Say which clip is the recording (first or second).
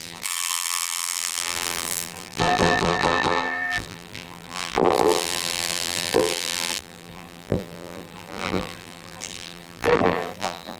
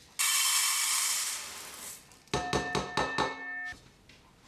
second